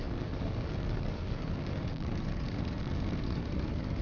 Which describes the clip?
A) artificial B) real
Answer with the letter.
A